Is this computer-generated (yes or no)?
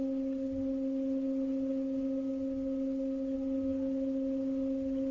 no